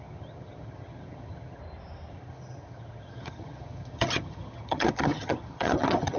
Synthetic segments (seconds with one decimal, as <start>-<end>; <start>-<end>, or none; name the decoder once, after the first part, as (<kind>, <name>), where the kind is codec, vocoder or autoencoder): 0.0-1.6 (vocoder, HiFi-GAN); 2.1-6.2